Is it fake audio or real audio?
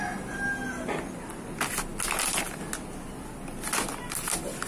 real